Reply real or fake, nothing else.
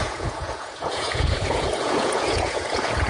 fake